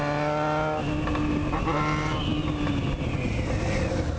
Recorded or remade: recorded